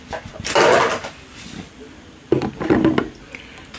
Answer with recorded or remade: recorded